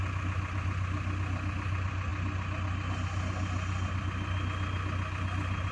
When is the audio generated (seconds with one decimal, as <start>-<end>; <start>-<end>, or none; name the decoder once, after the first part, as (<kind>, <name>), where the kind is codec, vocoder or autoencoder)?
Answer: none

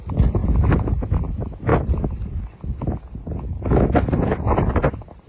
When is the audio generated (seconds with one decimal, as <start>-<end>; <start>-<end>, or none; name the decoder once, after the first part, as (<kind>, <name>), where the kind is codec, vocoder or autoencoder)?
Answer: none

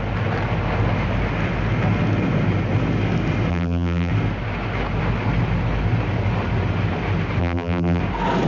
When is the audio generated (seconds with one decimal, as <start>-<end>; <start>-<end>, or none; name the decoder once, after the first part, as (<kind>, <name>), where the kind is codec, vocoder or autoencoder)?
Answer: 3.5-4.1 (vocoder, BigVGAN v2); 7.4-8.0

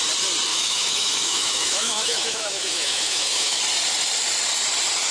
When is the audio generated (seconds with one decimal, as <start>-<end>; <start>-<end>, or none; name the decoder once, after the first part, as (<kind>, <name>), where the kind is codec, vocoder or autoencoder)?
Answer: 0.5-3.6 (autoencoder, DAC-VAE)

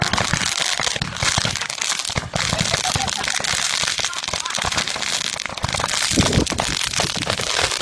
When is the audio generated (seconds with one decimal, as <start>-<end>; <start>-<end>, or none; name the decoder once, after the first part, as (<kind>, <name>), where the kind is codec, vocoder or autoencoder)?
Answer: none

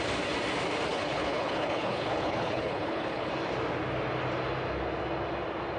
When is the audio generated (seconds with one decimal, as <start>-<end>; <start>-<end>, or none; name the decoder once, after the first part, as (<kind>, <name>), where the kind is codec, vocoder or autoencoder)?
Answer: 0.9-3.3 (codec, HILCodec)

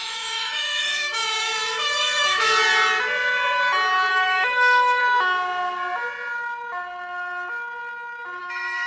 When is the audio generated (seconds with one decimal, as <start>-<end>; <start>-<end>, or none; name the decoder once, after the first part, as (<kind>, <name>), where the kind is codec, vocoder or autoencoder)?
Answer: 0.0-2.5 (autoencoder, DAC-VAE); 4.1-5.0; 8.4-8.9